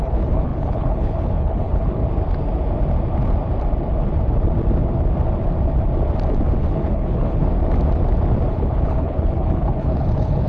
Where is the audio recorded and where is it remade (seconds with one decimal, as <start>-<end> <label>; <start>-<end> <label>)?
0.0-2.0 remade; 2.0-6.6 recorded; 6.6-7.4 remade; 7.4-8.5 recorded; 8.5-10.5 remade